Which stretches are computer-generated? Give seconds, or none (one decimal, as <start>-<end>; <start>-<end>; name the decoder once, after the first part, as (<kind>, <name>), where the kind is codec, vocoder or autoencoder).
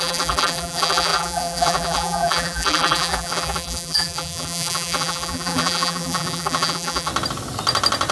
0.0-7.1 (vocoder, BigVGAN v2)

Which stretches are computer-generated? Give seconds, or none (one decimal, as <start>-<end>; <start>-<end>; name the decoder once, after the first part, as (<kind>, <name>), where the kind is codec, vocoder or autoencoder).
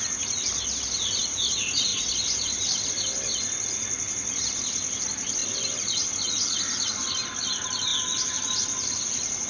none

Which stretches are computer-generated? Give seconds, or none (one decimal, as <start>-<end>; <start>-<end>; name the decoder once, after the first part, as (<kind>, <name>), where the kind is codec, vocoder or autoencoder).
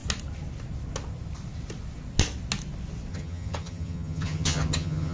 3.1-5.1 (vocoder, HiFi-GAN)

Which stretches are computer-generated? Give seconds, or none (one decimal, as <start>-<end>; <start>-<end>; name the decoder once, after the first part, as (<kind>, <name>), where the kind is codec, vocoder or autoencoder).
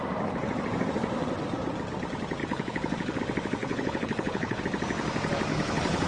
2.4-3.2 (codec, HILCodec); 3.6-4.6; 5.5-6.1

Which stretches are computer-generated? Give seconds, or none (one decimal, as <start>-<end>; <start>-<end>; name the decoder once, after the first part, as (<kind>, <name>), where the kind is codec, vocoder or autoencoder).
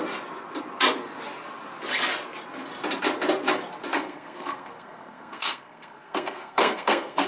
3.9-7.3 (codec, SNAC)